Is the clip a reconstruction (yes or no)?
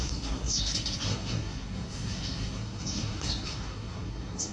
yes